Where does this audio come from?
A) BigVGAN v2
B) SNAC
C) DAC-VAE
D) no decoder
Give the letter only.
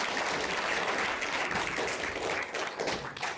D